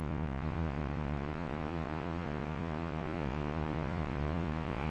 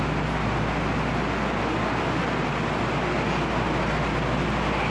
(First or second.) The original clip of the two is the second